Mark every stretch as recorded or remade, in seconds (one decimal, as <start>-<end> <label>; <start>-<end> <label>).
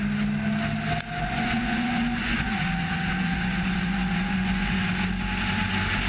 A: 0.0-1.2 recorded; 1.2-4.9 remade; 4.9-6.1 recorded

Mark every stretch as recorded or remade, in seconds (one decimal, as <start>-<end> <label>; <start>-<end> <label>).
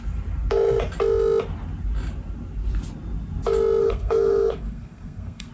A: 0.0-3.8 recorded; 3.8-5.5 remade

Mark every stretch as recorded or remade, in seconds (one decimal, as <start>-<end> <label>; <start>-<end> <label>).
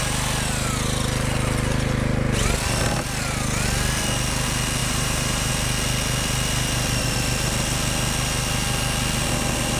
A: 0.0-4.8 recorded; 4.8-5.5 remade; 5.5-9.8 recorded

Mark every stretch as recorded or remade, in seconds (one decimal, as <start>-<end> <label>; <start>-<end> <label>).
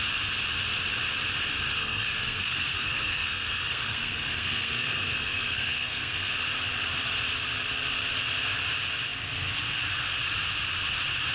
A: 0.0-1.8 recorded; 1.8-6.3 remade; 6.3-11.3 recorded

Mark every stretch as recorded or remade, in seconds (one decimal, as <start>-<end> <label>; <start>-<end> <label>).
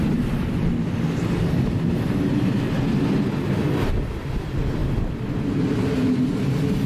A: 0.0-6.9 recorded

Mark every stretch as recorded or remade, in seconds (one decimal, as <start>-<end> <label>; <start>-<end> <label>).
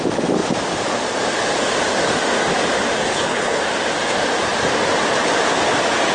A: 0.0-3.1 recorded; 3.1-3.6 remade; 3.6-6.1 recorded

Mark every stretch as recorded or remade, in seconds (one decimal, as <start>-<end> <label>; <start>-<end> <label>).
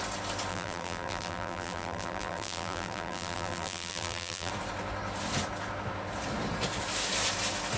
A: 0.0-0.5 recorded; 0.5-4.5 remade; 4.5-7.8 recorded